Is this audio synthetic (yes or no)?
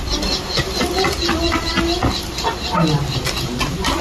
no